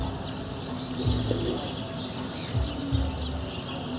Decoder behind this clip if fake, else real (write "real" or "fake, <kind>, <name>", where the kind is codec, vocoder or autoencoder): real